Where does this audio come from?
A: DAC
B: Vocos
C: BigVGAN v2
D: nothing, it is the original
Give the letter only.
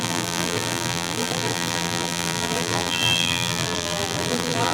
C